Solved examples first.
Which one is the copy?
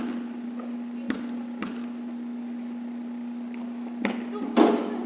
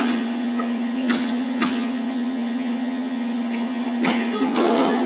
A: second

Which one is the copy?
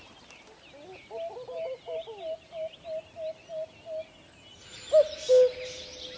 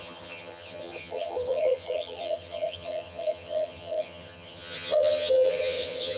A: second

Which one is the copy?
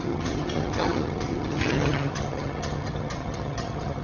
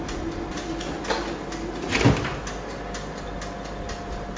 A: first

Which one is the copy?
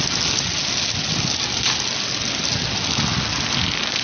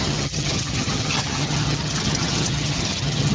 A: second